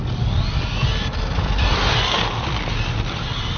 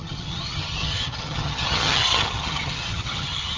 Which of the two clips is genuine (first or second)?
first